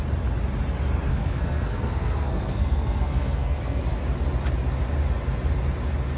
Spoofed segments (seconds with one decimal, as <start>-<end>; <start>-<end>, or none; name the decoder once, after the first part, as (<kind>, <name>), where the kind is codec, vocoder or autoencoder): 1.1-3.8 (codec, SNAC)